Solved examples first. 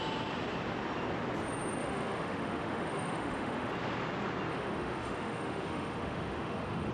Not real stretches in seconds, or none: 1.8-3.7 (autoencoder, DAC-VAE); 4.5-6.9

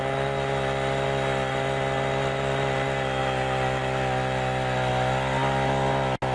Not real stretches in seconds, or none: none

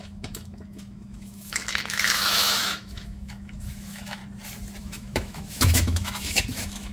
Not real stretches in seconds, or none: 0.0-4.2 (autoencoder, DAC-VAE); 4.8-6.9